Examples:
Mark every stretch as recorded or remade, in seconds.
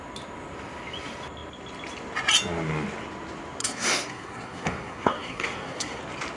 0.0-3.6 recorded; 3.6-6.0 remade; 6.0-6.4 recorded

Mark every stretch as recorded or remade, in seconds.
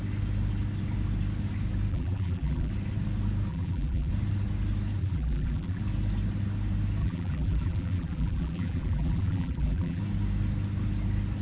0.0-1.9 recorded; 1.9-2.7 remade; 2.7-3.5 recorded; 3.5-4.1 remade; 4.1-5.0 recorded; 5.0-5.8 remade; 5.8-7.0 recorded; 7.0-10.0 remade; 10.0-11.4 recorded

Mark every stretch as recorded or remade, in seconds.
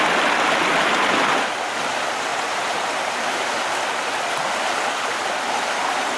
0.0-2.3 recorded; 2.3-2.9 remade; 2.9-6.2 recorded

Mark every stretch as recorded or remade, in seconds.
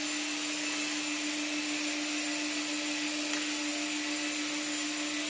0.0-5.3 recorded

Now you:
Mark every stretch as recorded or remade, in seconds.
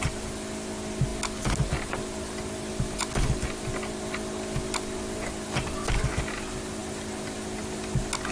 0.0-8.3 recorded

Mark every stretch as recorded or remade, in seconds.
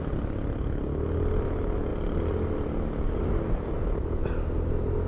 0.0-5.1 recorded